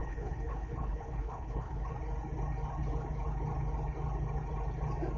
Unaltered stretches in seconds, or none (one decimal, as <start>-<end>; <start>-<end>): 1.9-5.2